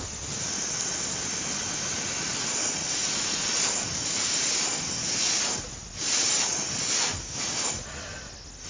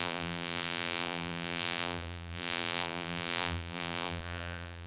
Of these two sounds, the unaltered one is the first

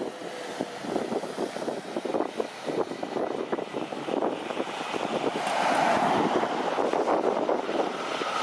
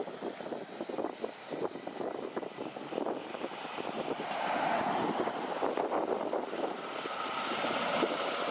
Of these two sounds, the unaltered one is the first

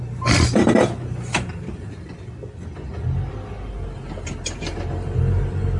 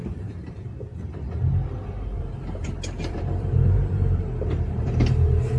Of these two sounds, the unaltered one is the first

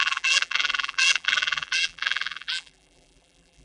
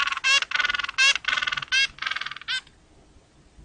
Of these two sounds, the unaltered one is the second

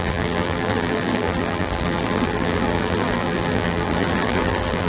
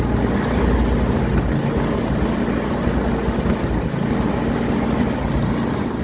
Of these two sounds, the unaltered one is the second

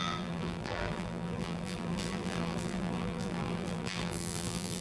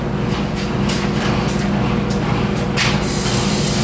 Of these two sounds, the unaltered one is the second